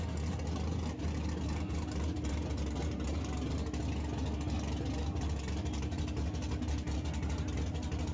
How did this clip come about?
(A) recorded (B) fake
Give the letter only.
A